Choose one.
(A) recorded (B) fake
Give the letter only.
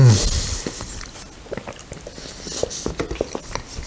A